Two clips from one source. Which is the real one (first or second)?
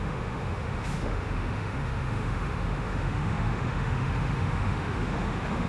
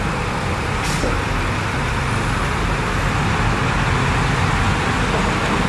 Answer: second